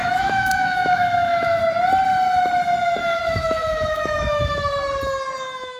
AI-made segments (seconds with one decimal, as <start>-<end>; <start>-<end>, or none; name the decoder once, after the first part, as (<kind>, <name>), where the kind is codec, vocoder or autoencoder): 0.0-1.6 (autoencoder, DAC-VAE); 3.0-4.7